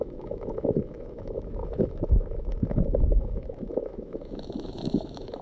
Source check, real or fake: fake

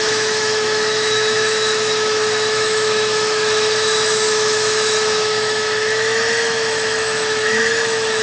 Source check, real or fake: fake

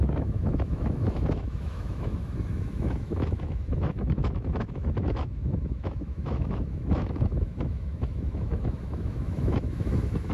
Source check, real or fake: fake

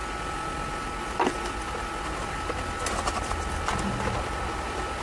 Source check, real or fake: real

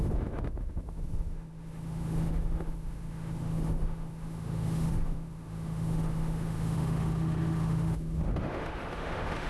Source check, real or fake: fake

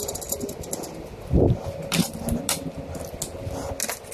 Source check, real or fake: real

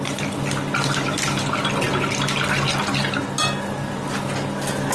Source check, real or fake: real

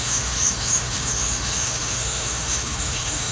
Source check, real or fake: fake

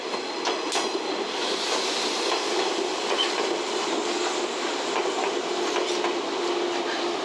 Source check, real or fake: real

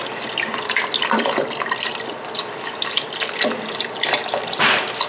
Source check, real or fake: real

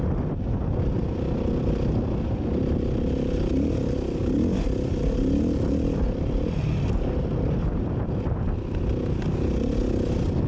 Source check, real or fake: real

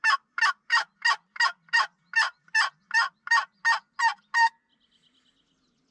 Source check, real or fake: real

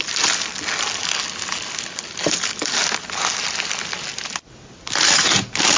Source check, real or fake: real